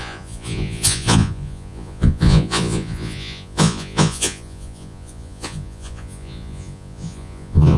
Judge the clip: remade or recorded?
remade